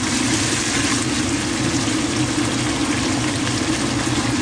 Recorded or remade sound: recorded